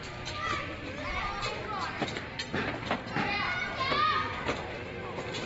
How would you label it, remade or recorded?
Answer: remade